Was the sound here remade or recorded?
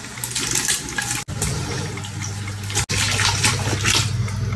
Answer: recorded